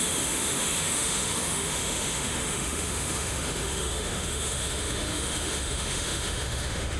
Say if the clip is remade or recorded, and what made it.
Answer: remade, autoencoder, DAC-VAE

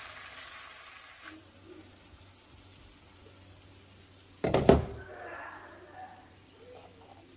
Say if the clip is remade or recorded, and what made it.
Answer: recorded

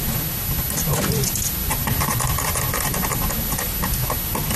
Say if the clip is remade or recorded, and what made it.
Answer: recorded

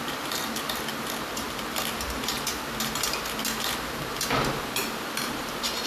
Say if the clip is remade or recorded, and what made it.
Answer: remade, vocoder, BigVGAN v2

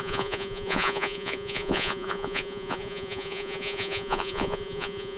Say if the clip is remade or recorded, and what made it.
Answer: remade, vocoder, Vocos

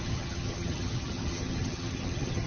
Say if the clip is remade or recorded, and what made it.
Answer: remade, vocoder, HiFi-GAN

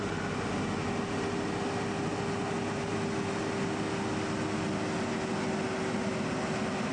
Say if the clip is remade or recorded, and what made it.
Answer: recorded